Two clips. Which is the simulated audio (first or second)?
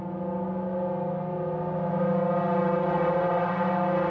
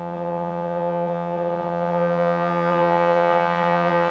second